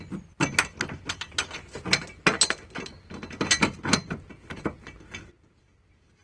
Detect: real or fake real